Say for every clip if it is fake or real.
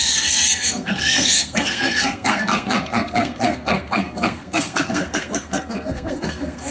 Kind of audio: fake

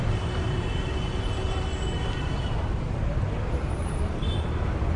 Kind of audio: fake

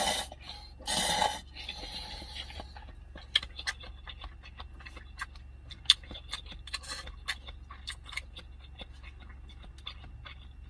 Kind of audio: real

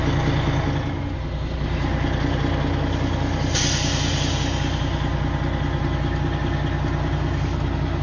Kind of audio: real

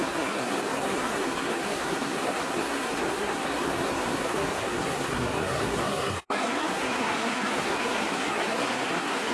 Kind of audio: fake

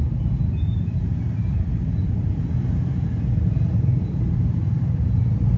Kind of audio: fake